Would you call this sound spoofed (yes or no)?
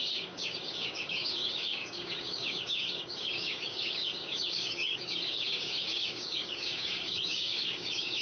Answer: yes